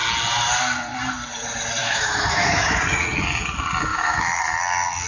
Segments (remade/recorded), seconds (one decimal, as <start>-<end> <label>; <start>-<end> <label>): 0.0-1.8 recorded; 1.8-2.8 remade; 2.8-3.9 recorded; 3.9-4.4 remade; 4.4-5.1 recorded